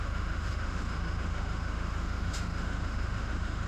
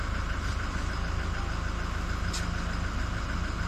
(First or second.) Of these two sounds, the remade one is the first